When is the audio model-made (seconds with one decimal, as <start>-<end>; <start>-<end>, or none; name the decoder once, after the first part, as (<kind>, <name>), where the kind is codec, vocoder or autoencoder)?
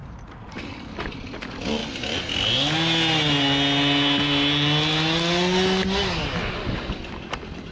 0.0-0.7 (vocoder, BigVGAN v2)